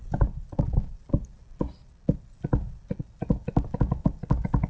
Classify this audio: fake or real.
real